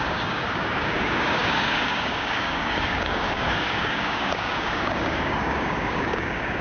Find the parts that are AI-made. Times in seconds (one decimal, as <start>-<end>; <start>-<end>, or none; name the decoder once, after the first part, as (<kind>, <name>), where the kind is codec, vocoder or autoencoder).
0.0-6.6 (codec, DAC)